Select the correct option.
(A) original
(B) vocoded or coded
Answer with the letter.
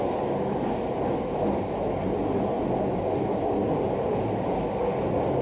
A